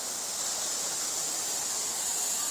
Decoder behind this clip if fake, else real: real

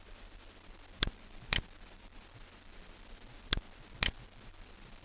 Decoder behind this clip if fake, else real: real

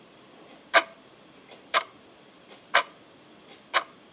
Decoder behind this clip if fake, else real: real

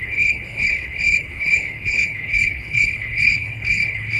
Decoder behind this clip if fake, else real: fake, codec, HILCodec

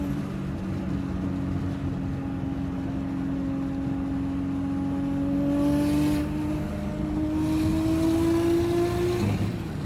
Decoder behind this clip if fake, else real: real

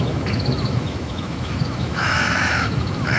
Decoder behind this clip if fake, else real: fake, autoencoder, DAC-VAE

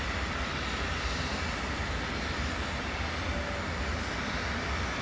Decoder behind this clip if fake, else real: real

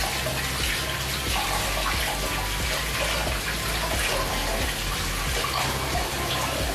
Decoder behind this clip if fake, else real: real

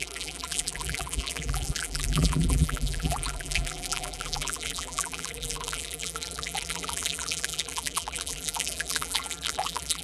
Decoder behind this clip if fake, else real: fake, vocoder, BigVGAN v2